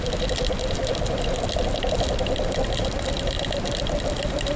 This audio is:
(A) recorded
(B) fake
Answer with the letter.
A